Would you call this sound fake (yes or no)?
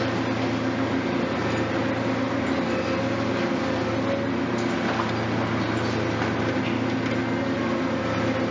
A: no